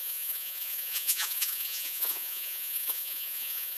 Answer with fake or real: fake